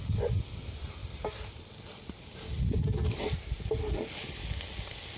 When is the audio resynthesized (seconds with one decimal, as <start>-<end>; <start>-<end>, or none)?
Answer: none